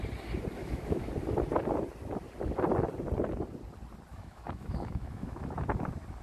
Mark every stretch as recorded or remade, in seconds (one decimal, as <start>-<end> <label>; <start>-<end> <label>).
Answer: 0.0-0.6 recorded; 0.6-1.1 remade; 1.1-4.1 recorded; 4.1-5.6 remade; 5.6-6.2 recorded